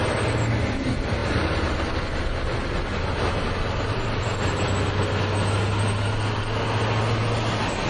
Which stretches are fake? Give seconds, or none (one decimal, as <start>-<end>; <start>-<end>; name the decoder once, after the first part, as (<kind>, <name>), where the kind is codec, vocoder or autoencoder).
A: none